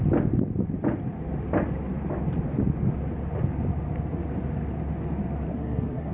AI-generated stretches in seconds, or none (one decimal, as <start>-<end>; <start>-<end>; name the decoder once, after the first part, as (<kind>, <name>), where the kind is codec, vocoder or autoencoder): 5.5-6.1 (codec, SNAC)